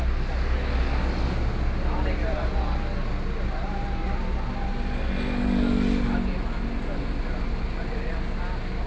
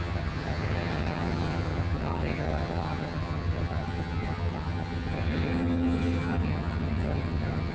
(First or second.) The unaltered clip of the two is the first